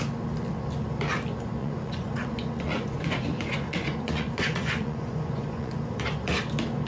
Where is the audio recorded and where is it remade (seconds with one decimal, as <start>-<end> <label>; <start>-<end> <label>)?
0.0-1.6 recorded; 1.6-5.7 remade; 5.7-6.9 recorded